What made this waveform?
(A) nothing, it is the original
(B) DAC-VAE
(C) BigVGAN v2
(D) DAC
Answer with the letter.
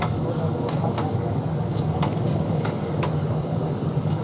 D